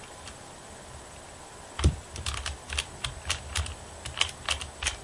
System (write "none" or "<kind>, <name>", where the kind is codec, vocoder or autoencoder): none